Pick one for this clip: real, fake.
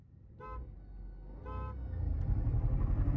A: real